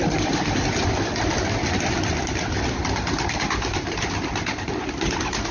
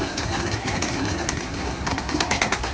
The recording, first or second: first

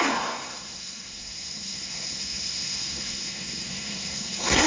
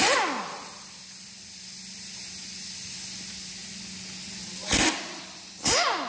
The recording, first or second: second